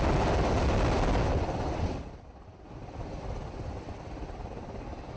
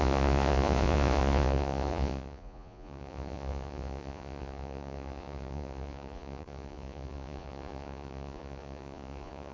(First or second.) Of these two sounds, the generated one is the second